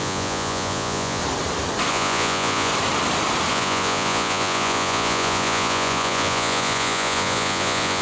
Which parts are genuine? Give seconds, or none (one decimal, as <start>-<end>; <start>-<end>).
1.2-1.9; 2.7-3.5